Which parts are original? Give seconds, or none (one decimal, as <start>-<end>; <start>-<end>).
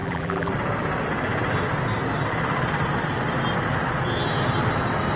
0.5-5.2